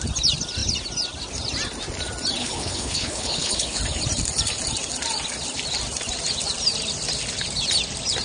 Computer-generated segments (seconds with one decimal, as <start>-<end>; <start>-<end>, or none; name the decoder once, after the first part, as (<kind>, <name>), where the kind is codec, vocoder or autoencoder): 2.4-3.8 (codec, HILCodec)